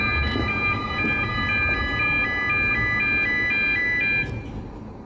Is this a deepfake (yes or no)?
no